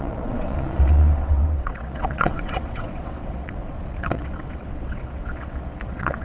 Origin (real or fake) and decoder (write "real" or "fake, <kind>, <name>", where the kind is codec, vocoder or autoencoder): fake, vocoder, WaveNeXt